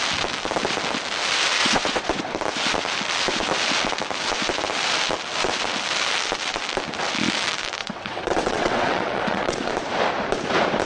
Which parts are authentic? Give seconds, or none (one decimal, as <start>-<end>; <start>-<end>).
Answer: 0.0-1.6; 2.2-7.8; 9.7-10.9